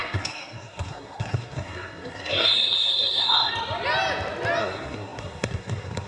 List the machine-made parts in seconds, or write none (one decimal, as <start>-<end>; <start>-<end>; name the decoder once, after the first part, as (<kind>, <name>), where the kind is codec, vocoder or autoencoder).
0.0-3.5 (codec, SNAC); 4.6-6.1